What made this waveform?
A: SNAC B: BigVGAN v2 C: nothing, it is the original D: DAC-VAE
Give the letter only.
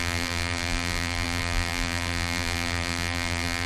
B